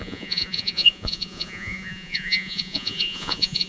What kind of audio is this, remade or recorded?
remade